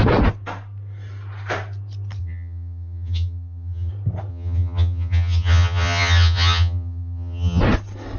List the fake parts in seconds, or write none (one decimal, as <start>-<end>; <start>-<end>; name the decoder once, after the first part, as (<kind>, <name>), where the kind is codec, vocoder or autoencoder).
2.2-3.9 (vocoder, HiFi-GAN); 4.3-7.6

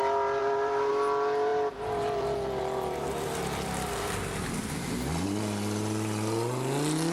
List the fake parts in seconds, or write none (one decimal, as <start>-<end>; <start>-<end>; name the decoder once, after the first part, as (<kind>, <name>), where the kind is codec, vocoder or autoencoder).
0.4-0.9 (vocoder, BigVGAN v2)

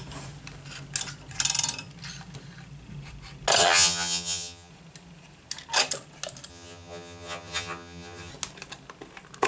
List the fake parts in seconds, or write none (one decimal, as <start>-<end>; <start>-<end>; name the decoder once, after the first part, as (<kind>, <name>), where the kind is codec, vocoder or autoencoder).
3.6-4.7 (vocoder, HiFi-GAN); 6.5-8.3